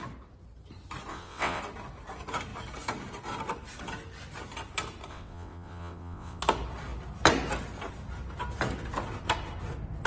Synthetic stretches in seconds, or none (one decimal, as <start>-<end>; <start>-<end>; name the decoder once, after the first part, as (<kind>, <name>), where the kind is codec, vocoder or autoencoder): 1.1-1.6 (vocoder, WaveNeXt); 5.1-6.4